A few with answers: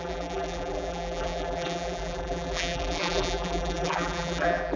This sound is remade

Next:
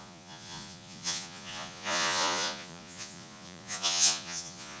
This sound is remade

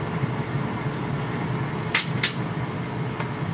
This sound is recorded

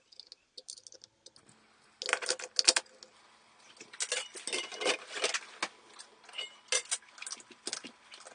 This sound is recorded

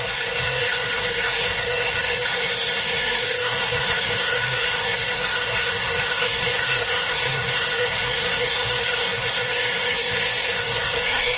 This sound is remade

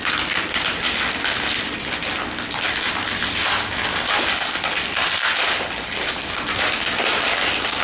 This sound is recorded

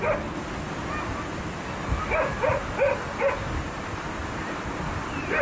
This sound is recorded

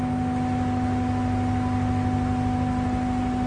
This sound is recorded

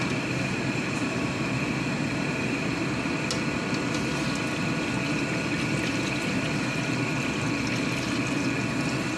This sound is recorded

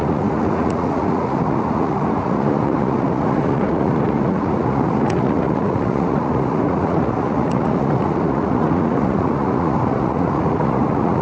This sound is remade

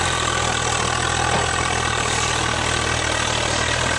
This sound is recorded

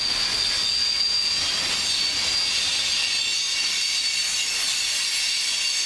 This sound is recorded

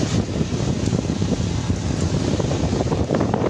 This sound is remade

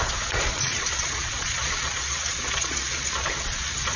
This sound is remade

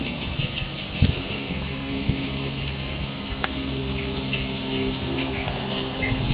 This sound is remade